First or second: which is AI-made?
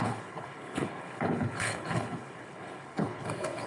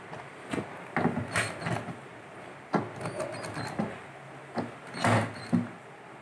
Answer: first